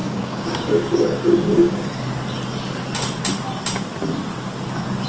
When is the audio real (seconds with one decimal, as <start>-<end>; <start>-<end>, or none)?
1.9-5.1